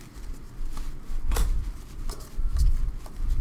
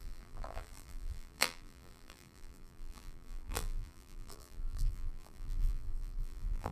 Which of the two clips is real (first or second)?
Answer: first